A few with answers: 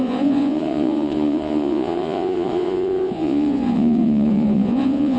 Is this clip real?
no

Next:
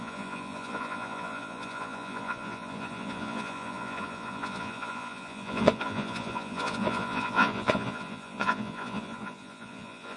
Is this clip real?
no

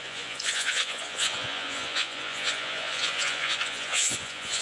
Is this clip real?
no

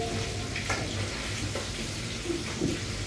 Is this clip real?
yes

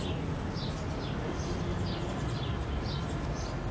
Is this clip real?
yes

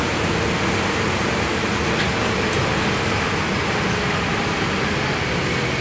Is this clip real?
yes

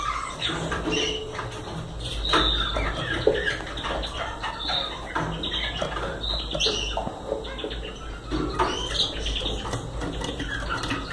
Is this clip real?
yes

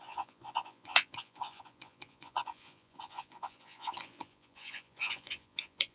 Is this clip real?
no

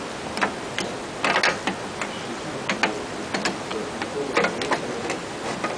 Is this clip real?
yes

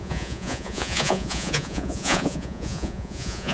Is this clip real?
no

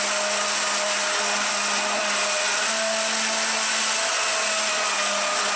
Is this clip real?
yes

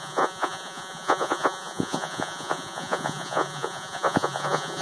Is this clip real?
no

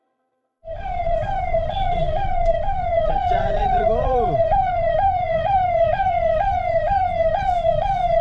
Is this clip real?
no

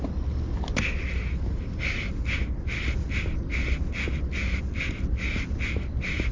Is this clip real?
yes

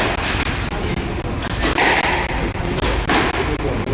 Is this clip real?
yes